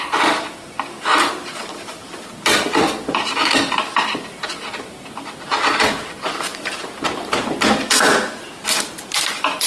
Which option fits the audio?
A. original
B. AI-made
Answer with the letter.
B